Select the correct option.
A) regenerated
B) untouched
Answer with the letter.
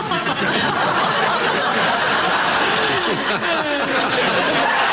B